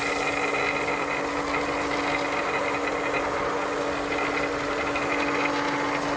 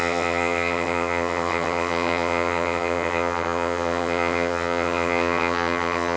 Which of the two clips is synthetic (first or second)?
second